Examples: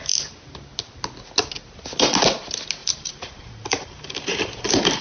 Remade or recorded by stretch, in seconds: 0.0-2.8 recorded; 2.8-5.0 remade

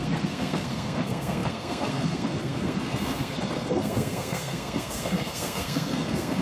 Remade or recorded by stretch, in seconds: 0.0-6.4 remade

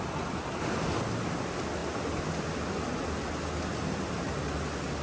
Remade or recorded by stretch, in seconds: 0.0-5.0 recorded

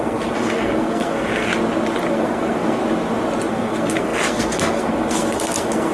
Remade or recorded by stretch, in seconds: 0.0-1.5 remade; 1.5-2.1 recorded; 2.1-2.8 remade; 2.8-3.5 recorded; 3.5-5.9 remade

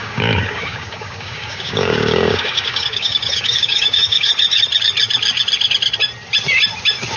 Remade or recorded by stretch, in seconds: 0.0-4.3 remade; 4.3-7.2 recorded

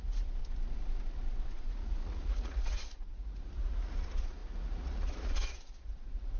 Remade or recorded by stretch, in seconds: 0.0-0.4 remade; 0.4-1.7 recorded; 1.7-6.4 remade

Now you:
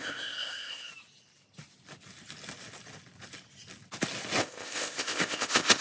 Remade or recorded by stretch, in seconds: 0.0-0.9 remade; 0.9-4.4 recorded; 4.4-5.8 remade

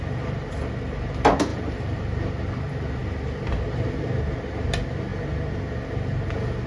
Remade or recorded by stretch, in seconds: 0.0-1.5 recorded; 1.5-2.0 remade; 2.0-6.7 recorded